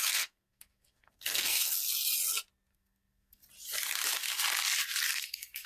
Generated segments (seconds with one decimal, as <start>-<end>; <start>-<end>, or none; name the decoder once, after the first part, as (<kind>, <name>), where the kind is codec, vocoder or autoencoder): 0.0-1.8 (codec, SNAC); 2.7-3.4; 5.0-5.7